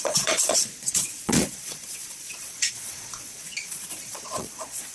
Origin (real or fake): fake